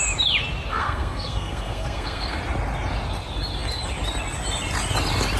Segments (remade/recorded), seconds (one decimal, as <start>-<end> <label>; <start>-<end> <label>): 0.0-0.7 recorded; 0.7-2.4 remade; 2.4-5.4 recorded